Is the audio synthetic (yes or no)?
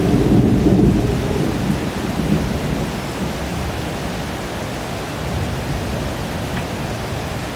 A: no